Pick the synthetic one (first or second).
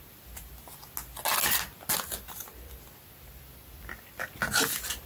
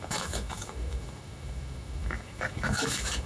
second